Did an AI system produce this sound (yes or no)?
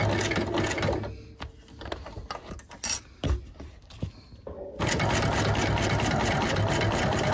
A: no